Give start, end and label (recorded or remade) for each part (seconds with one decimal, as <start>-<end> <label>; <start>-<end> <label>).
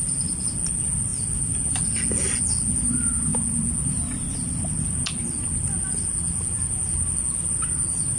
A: 0.0-8.2 recorded